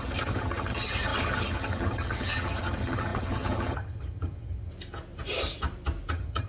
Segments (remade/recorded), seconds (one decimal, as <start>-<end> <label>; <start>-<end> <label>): 0.0-4.7 remade; 4.7-6.1 recorded; 6.1-6.5 remade